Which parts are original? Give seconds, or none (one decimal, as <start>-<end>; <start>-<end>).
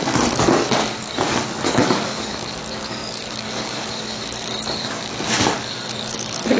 none